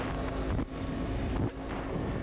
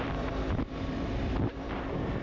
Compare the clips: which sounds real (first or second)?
first